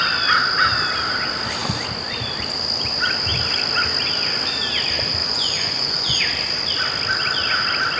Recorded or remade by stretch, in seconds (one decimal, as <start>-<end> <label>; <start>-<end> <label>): 0.0-5.2 recorded; 5.2-6.2 remade; 6.2-8.0 recorded